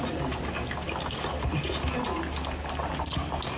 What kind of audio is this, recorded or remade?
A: recorded